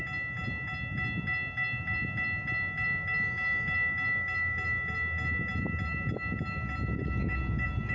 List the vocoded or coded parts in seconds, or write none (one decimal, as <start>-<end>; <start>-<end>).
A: none